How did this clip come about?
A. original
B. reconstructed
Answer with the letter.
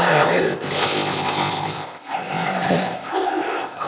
B